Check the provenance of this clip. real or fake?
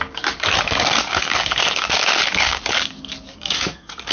fake